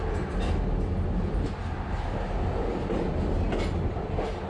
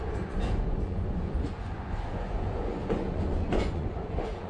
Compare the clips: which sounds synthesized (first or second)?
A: second